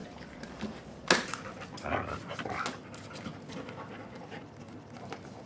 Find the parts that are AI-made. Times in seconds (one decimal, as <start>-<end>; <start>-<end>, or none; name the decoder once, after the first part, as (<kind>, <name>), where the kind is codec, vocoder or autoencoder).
none